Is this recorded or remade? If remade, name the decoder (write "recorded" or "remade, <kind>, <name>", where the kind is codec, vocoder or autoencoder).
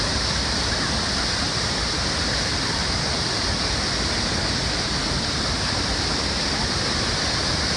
recorded